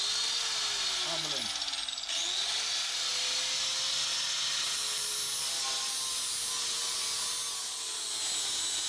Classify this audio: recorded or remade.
recorded